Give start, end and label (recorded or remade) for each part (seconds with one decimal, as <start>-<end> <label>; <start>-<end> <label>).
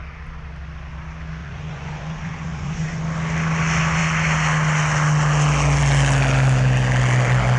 0.0-1.4 recorded; 1.4-3.0 remade; 3.0-7.6 recorded